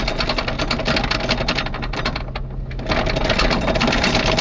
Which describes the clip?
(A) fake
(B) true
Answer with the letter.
B